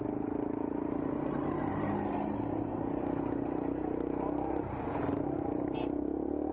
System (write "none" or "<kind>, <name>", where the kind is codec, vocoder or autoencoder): none